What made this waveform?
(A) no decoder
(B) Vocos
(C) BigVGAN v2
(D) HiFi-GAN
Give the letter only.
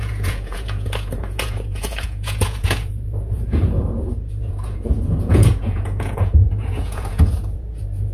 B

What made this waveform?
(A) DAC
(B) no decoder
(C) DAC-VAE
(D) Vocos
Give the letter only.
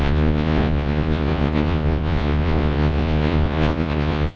D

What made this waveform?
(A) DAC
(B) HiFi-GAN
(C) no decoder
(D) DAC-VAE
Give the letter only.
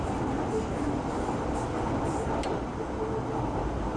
C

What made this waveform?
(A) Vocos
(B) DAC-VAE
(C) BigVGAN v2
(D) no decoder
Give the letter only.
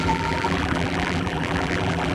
C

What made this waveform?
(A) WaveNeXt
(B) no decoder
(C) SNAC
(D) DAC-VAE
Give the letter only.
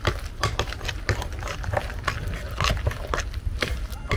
B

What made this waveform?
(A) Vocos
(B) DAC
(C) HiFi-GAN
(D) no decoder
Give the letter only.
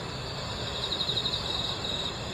D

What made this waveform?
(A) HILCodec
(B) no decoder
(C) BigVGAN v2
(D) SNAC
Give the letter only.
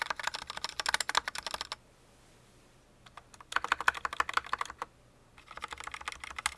B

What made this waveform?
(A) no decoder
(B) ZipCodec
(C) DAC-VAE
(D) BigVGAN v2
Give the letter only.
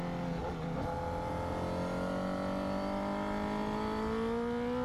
A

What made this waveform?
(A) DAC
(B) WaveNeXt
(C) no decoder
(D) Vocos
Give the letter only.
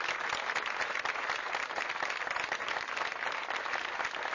C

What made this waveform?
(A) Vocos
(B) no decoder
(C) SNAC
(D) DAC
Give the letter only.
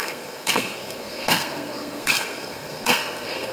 C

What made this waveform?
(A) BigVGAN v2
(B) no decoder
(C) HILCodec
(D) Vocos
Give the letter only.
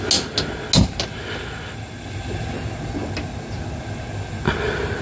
B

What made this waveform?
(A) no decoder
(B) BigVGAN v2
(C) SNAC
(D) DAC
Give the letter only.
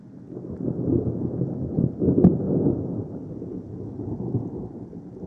A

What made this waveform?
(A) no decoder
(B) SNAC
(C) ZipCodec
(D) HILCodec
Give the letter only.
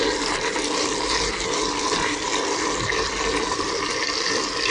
A